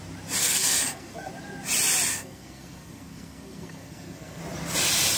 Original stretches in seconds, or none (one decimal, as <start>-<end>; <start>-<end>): 0.0-0.4; 1.3-2.1; 4.4-5.2